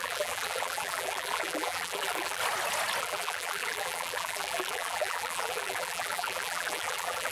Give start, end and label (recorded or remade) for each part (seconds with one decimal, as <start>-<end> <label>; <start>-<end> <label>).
0.0-2.4 remade; 2.4-3.0 recorded; 3.0-7.3 remade